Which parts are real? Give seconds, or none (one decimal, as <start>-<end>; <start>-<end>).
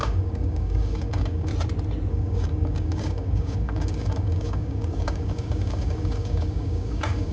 1.5-2.1